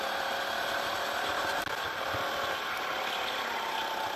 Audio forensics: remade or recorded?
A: recorded